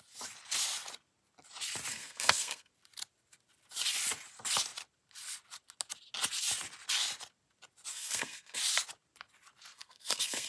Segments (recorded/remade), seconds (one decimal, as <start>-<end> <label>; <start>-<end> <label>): 0.0-1.9 recorded; 1.9-2.7 remade; 2.7-7.9 recorded; 7.9-8.6 remade; 8.6-9.7 recorded; 9.7-10.5 remade